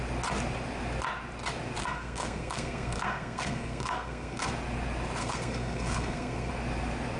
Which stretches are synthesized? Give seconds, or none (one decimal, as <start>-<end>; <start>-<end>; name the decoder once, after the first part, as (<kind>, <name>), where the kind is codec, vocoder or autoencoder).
1.8-4.5 (codec, SNAC); 5.2-6.5